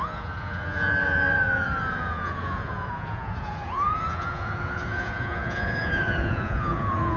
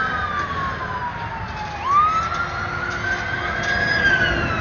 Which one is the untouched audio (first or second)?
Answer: second